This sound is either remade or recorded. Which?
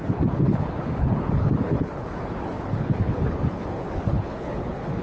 remade